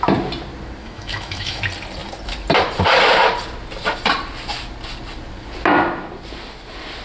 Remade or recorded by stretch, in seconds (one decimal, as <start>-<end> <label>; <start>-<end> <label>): 0.0-0.8 recorded; 0.8-1.6 remade; 1.6-7.0 recorded